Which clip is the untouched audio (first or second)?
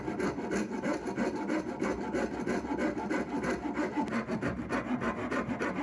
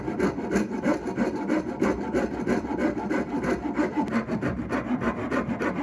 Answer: first